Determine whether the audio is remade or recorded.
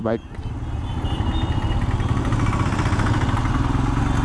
recorded